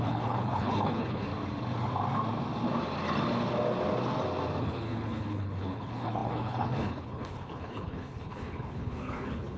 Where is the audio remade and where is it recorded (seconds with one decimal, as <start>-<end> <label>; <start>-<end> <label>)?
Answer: 0.0-1.3 remade; 1.3-4.6 recorded; 4.6-9.6 remade

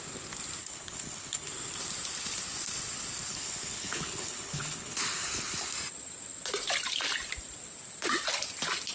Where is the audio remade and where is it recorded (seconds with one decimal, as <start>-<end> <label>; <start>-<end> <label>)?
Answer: 0.0-0.6 recorded; 0.6-1.5 remade; 1.5-3.3 recorded; 3.3-5.7 remade; 5.7-8.9 recorded

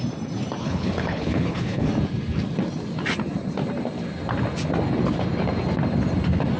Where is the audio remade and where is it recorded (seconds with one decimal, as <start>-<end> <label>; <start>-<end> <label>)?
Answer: 0.0-0.6 recorded; 0.6-1.9 remade; 1.9-6.6 recorded

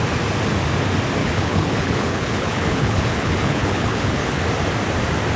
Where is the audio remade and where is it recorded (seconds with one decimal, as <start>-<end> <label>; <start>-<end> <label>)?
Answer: 0.0-1.2 recorded; 1.2-4.4 remade; 4.4-5.4 recorded

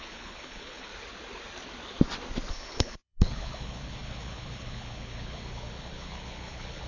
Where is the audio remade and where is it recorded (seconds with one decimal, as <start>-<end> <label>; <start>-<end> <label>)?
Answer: 0.0-0.9 remade; 0.9-2.5 recorded; 2.5-6.9 remade

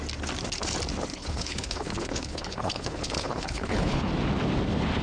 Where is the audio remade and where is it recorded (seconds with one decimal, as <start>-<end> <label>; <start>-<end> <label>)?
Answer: 0.0-1.1 recorded; 1.1-4.1 remade; 4.1-5.0 recorded